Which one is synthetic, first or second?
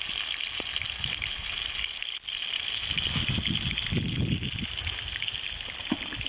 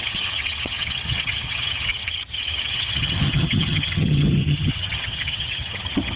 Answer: second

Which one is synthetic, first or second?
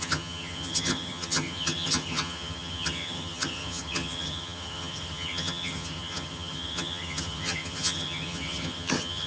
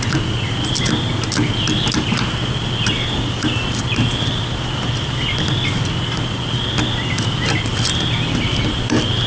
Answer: first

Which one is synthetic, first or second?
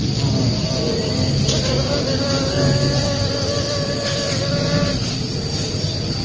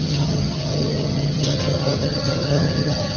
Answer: second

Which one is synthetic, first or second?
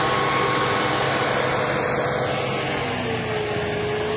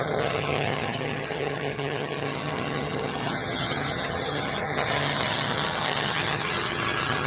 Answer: second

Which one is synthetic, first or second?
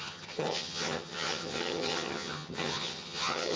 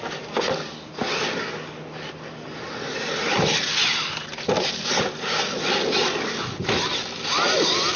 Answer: first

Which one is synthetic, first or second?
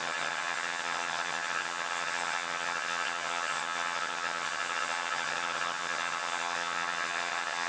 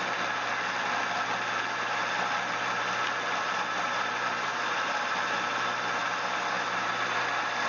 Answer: first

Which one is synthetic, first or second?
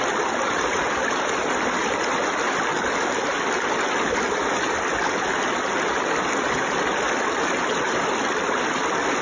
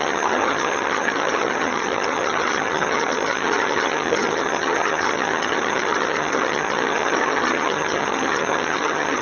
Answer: second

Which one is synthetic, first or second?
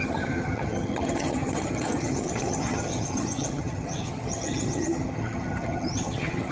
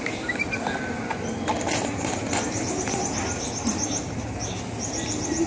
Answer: first